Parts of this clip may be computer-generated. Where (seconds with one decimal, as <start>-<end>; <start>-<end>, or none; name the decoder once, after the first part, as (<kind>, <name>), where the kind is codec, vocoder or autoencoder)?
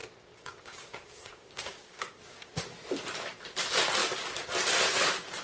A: 0.0-2.5 (codec, DAC)